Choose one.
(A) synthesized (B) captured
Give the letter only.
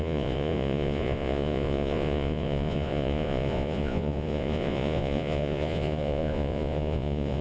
A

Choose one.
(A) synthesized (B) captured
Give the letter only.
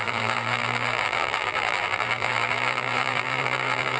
A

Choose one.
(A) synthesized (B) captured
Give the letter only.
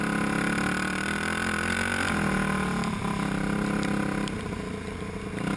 B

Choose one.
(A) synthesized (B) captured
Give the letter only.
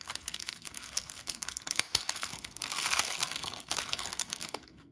A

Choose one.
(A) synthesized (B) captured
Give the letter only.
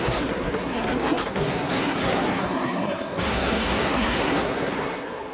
A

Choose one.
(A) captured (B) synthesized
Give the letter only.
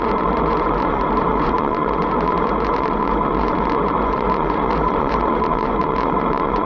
B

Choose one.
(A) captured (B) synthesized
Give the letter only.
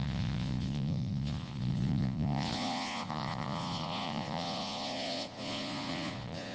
B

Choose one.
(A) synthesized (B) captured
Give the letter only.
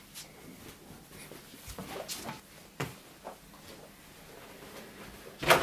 B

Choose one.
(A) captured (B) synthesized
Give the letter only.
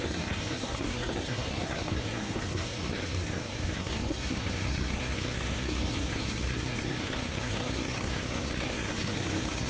B